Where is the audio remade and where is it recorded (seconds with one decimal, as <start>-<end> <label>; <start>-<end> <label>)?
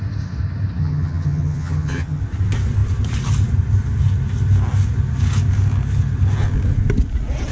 0.0-0.8 recorded; 0.8-2.2 remade; 2.2-7.5 recorded